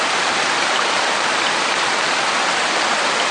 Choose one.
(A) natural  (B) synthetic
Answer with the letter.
A